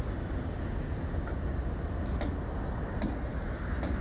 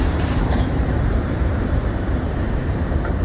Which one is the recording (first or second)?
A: first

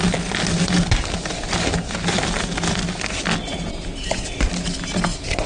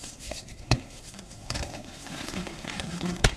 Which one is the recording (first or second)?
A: first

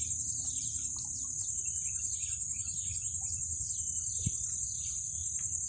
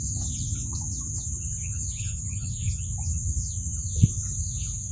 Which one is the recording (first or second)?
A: first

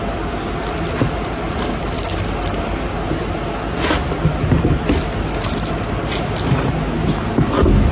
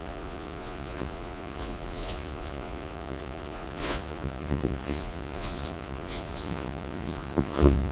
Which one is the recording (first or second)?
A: first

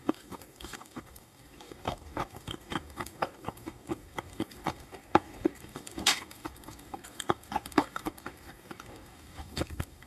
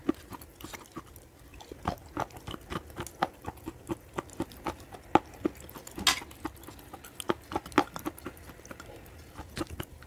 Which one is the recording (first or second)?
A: second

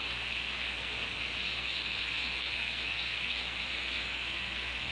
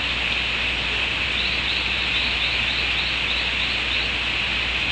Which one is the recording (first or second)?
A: second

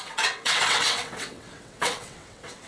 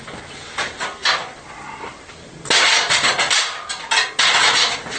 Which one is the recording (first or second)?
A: second